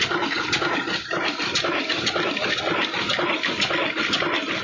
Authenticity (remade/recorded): recorded